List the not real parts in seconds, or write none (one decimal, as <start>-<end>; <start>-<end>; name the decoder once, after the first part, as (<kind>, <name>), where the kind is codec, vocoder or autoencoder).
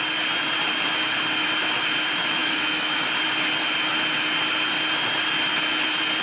2.4-3.1 (autoencoder, DAC-VAE)